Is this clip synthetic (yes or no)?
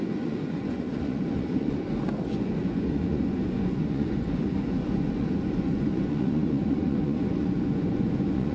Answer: yes